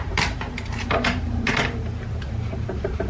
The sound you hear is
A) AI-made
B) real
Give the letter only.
A